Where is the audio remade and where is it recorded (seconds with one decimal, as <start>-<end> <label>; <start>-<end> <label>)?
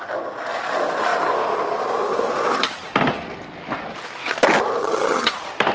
0.0-4.8 recorded; 4.8-5.3 remade; 5.3-5.7 recorded